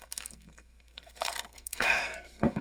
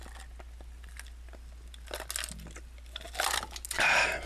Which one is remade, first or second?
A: first